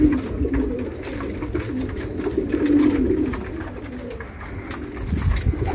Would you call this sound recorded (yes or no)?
yes